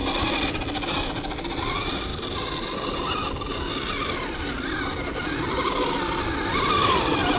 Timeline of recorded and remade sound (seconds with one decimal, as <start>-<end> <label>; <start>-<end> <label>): 0.0-7.4 recorded